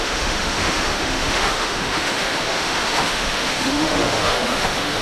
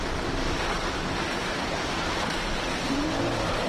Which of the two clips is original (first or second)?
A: second